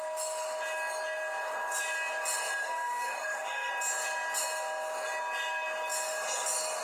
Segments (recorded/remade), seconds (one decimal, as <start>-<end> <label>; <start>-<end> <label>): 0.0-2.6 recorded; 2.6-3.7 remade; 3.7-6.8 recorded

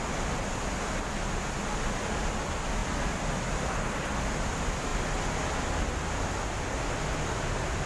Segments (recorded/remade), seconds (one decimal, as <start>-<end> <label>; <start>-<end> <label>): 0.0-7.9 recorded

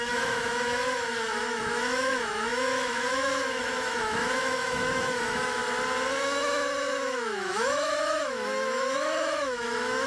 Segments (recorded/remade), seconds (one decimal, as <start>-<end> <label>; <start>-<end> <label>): 0.0-5.6 remade; 5.6-6.2 recorded; 6.2-10.1 remade

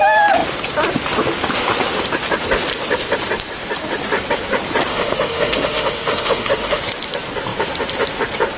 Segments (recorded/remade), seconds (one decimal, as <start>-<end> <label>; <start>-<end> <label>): 0.0-4.9 recorded; 4.9-6.8 remade; 6.8-8.6 recorded

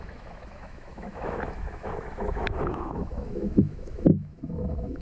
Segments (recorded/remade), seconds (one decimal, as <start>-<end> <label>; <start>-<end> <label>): 0.0-5.0 remade

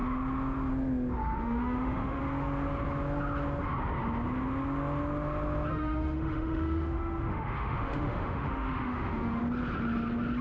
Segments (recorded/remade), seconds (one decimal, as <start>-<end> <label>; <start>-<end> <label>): 0.0-1.2 recorded; 1.2-2.2 remade; 2.2-5.7 recorded; 5.7-9.4 remade; 9.4-10.4 recorded